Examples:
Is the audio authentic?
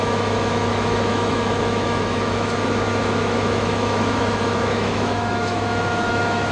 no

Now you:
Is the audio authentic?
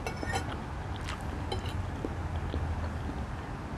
yes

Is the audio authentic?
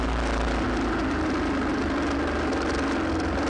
yes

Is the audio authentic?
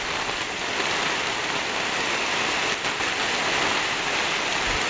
yes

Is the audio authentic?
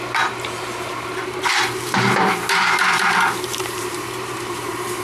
no